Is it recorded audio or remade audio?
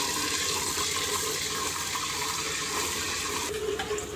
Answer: recorded